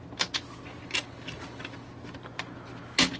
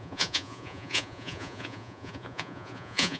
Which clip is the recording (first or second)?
first